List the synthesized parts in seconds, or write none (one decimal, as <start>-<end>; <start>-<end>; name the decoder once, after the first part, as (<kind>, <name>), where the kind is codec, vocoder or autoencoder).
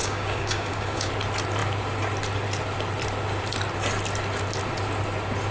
0.0-1.1 (codec, DAC)